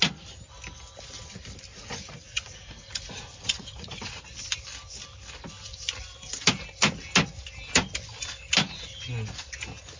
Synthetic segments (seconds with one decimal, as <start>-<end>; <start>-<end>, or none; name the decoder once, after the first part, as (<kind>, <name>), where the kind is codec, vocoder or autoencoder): 1.7-4.2 (vocoder, Vocos)